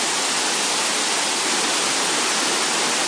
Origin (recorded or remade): recorded